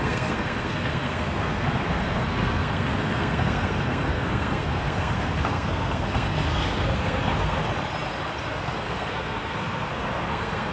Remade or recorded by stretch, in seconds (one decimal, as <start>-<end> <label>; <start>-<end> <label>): 0.0-7.6 remade; 7.6-8.5 recorded; 8.5-10.7 remade